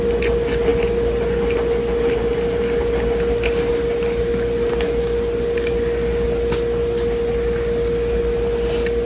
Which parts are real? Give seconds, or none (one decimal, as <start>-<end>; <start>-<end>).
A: 0.0-9.1